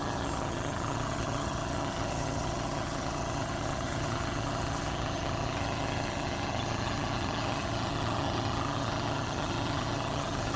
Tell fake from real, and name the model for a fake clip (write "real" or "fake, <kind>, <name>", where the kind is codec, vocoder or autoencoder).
fake, vocoder, HiFi-GAN